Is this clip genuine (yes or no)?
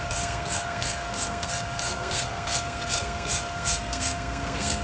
no